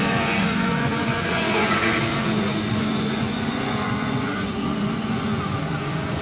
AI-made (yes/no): yes